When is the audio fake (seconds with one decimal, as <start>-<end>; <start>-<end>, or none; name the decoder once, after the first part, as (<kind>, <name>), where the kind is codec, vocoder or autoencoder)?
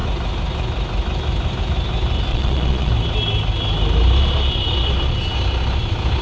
2.3-2.9 (vocoder, Vocos)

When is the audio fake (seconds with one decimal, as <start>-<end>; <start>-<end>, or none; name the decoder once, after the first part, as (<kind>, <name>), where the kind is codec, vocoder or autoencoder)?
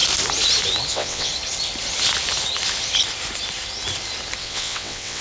0.9-1.3 (vocoder, WaveNeXt); 4.4-5.2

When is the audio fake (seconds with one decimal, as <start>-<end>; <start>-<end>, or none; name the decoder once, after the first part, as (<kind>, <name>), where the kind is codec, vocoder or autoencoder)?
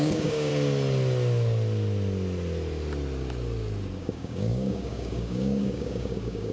0.0-0.5 (codec, DAC); 4.0-6.5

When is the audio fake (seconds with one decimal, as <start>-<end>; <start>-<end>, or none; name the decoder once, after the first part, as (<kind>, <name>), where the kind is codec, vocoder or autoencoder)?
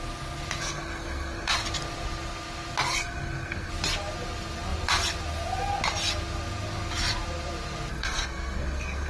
0.6-1.5 (codec, SNAC); 3.0-3.7; 7.9-9.1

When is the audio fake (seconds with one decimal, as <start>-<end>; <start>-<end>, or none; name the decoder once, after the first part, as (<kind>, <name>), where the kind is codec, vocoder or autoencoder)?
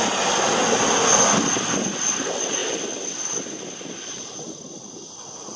none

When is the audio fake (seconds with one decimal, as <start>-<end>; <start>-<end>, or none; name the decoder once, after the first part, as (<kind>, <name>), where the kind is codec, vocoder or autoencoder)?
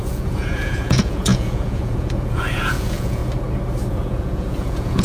0.0-3.2 (vocoder, Vocos); 3.9-5.0